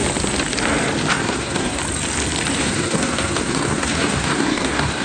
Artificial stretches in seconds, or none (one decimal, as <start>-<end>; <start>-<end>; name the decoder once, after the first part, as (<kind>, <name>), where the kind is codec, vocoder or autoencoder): 1.1-1.8 (codec, SNAC); 2.6-5.0